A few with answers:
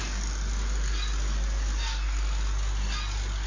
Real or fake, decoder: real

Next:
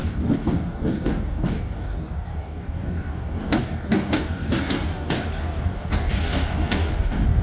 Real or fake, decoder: fake, codec, DAC